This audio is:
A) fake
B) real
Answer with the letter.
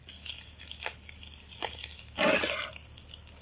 B